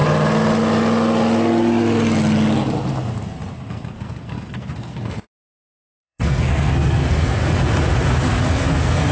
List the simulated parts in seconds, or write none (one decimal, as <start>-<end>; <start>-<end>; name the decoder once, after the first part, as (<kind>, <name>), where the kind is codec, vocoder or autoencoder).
3.7-7.4 (codec, SNAC); 8.2-9.1